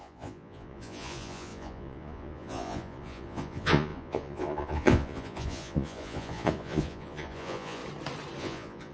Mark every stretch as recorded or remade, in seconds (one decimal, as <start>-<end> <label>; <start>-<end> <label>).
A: 0.0-7.8 remade; 7.8-8.4 recorded; 8.4-8.9 remade